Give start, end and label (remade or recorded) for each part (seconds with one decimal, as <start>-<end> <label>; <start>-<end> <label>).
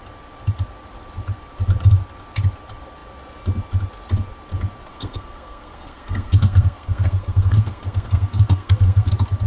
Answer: 0.0-4.9 recorded; 4.9-9.1 remade; 9.1-9.5 recorded